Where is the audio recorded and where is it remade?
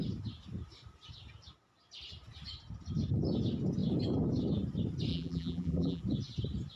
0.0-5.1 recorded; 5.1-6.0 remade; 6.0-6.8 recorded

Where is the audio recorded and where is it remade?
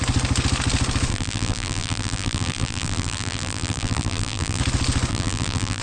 0.0-1.1 recorded; 1.1-4.6 remade; 4.6-5.1 recorded; 5.1-5.8 remade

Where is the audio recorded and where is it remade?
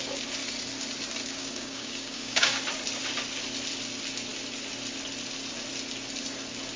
0.0-1.4 recorded; 1.4-2.6 remade; 2.6-6.8 recorded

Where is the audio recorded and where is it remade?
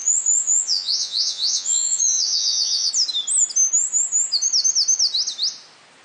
0.0-2.9 remade; 2.9-6.0 recorded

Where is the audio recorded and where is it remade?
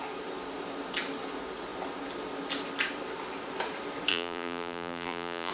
0.0-4.1 recorded; 4.1-5.5 remade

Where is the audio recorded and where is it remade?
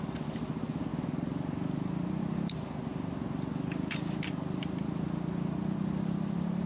0.0-6.7 recorded